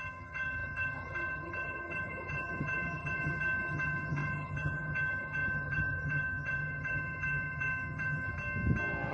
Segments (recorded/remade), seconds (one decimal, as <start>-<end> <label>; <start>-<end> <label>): 0.0-8.3 remade; 8.3-9.1 recorded